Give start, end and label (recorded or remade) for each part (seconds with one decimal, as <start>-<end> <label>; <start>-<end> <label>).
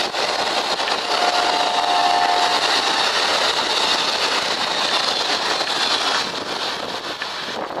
0.0-7.8 recorded